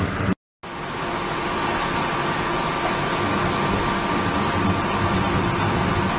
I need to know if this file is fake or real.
real